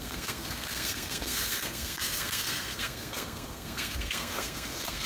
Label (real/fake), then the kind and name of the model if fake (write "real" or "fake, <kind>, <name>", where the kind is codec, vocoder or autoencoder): fake, codec, SNAC